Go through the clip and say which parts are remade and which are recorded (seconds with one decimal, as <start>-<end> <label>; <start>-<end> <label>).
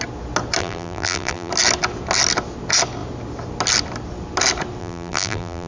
0.0-0.6 recorded; 0.6-1.5 remade; 1.5-4.8 recorded; 4.8-5.7 remade